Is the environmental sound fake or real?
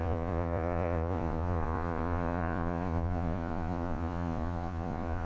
fake